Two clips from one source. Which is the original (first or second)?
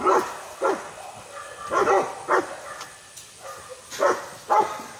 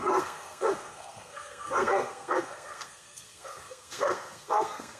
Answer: first